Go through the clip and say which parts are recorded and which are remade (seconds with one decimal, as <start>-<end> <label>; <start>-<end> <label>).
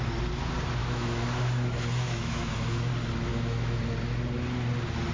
0.0-0.8 recorded; 0.8-2.9 remade; 2.9-3.3 recorded; 3.3-3.8 remade; 3.8-5.1 recorded